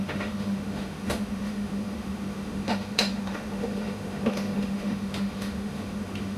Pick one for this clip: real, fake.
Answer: fake